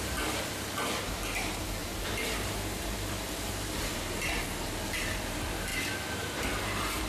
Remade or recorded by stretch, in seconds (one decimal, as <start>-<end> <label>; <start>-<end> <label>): 0.0-1.8 recorded; 1.8-3.5 remade; 3.5-5.7 recorded; 5.7-7.1 remade